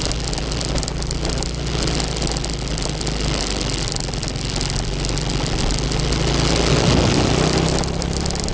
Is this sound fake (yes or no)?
no